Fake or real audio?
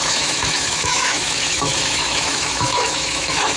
fake